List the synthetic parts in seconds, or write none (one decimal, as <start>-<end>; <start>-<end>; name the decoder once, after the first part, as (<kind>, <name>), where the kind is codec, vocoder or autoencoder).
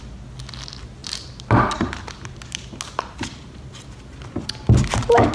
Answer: 1.0-1.6 (vocoder, BigVGAN v2)